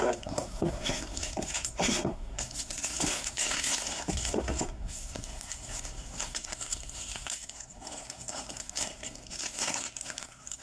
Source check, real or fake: fake